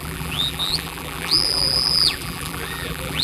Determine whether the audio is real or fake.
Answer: fake